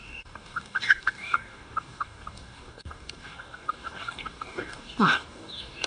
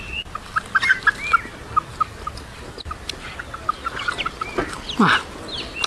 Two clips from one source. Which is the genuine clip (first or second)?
second